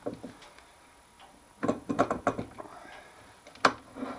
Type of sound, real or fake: real